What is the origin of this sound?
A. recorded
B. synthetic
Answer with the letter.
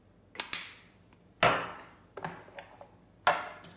A